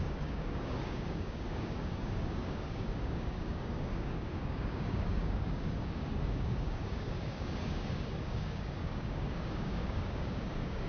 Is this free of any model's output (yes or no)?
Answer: no